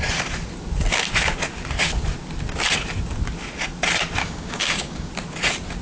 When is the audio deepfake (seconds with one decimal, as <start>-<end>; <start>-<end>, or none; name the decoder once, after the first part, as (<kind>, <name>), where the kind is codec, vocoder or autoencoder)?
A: 4.2-5.1 (codec, DAC)